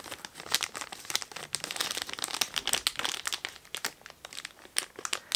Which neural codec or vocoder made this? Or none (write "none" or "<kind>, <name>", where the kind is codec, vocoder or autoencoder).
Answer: none